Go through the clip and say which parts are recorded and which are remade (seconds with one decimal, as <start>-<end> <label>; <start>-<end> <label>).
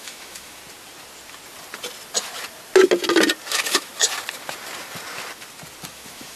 0.0-0.6 remade; 0.6-3.5 recorded; 3.5-3.9 remade; 3.9-5.9 recorded; 5.9-6.4 remade